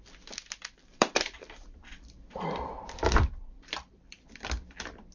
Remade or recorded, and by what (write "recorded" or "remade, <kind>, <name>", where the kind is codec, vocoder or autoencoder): remade, vocoder, BigVGAN v2